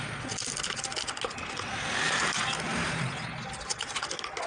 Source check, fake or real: real